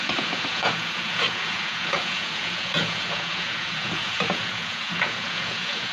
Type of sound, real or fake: fake